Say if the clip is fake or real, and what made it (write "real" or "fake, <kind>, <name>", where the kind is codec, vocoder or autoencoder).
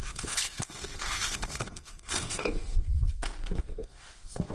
fake, codec, SNAC